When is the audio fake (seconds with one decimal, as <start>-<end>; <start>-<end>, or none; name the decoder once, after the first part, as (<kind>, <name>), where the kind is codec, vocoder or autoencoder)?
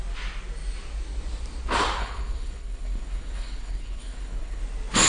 2.0-4.6 (codec, HILCodec)